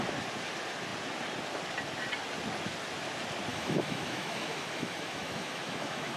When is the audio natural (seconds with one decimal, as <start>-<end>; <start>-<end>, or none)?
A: 0.0-3.5